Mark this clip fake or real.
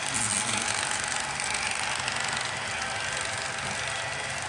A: real